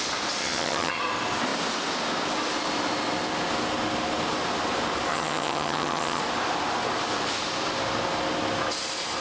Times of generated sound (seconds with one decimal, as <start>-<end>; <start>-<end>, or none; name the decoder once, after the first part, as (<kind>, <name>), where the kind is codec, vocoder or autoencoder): 0.4-1.0 (vocoder, HiFi-GAN); 5.1-6.2